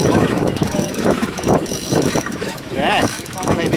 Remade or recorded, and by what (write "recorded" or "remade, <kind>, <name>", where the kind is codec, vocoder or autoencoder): remade, autoencoder, DAC-VAE